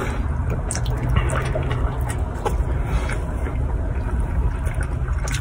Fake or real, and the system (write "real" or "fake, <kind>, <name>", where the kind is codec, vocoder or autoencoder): real